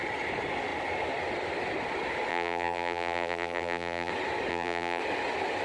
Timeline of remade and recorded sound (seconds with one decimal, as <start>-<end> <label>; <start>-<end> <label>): 0.0-2.3 recorded; 2.3-4.1 remade; 4.1-4.5 recorded; 4.5-5.0 remade; 5.0-5.6 recorded